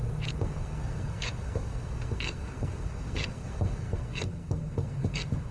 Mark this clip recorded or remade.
remade